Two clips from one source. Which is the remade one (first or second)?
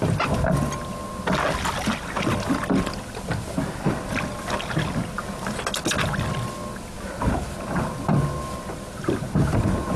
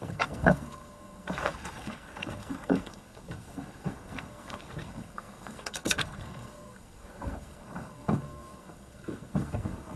second